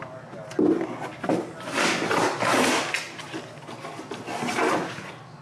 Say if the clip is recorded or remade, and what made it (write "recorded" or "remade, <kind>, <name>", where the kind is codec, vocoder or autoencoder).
recorded